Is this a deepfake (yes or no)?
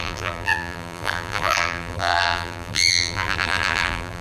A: yes